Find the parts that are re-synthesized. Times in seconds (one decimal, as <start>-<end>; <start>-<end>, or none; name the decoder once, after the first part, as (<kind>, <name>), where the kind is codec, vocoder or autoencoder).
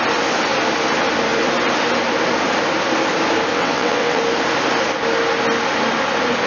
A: 3.5-4.2 (vocoder, WaveNeXt)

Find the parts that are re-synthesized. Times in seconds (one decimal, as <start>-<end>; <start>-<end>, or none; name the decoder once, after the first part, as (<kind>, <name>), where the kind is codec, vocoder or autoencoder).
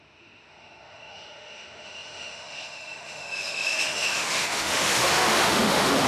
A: 0.0-6.1 (autoencoder, DAC-VAE)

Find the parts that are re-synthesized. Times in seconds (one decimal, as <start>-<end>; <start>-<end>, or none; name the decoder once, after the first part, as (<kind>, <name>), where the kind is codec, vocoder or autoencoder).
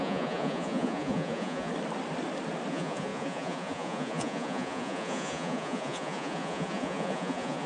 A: 0.0-1.7 (vocoder, Vocos); 2.7-7.7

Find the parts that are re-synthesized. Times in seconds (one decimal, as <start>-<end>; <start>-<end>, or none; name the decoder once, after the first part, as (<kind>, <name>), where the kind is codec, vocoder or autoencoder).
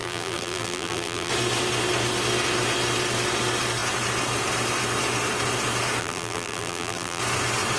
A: 0.0-1.3 (vocoder, BigVGAN v2); 6.0-7.2